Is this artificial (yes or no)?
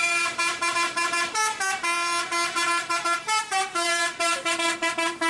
yes